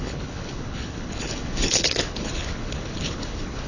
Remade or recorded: remade